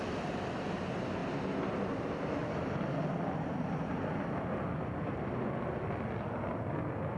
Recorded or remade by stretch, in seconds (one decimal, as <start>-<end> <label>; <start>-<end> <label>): 0.0-7.2 recorded